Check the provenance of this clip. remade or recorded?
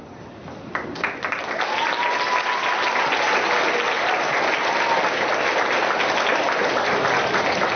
recorded